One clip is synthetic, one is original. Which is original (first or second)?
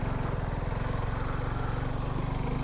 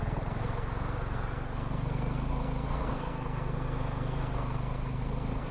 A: first